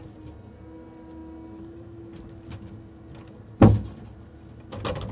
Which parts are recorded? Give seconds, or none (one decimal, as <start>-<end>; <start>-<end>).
0.0-5.1